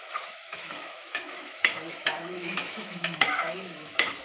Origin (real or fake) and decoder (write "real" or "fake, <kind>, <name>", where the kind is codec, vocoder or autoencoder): fake, autoencoder, DAC-VAE